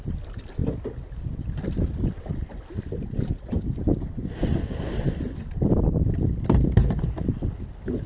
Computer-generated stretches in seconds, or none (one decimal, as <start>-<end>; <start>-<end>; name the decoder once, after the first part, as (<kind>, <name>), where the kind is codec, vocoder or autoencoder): 0.6-3.8 (vocoder, BigVGAN v2); 4.5-7.5